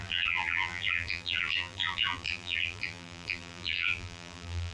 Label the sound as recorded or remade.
remade